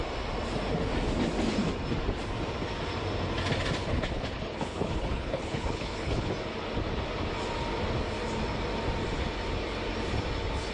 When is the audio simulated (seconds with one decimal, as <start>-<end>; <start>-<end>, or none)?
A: 3.8-6.3